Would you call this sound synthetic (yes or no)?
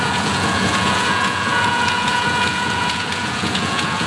yes